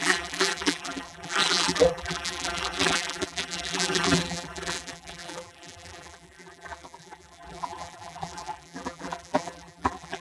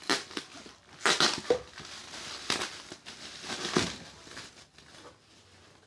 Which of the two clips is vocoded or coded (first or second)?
first